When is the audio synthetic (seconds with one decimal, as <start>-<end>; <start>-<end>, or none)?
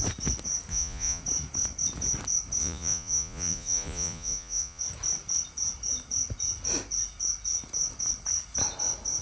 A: 0.7-1.2; 2.6-4.8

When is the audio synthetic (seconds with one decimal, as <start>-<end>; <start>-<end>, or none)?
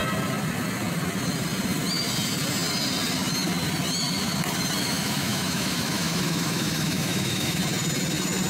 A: 4.8-7.6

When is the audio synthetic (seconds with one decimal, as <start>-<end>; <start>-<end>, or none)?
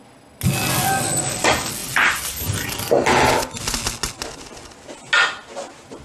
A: 1.8-3.1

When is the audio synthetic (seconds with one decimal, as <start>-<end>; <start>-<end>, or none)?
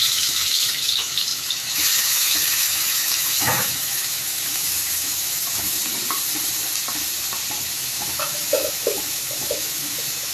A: 0.0-5.8; 7.7-10.3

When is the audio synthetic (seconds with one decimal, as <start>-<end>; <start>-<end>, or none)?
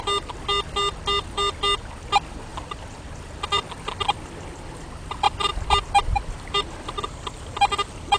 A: none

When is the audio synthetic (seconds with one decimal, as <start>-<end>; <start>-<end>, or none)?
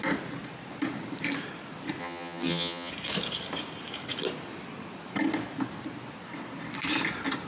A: 2.0-2.9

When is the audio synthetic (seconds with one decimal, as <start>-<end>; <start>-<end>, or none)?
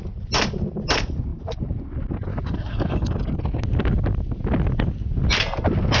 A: 2.3-3.1